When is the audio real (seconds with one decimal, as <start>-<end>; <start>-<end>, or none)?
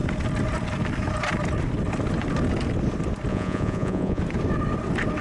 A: 0.0-3.3; 4.2-5.2